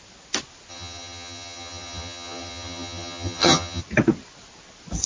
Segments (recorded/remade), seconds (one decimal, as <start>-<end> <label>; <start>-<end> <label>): 0.0-0.7 recorded; 0.7-3.8 remade; 3.8-5.1 recorded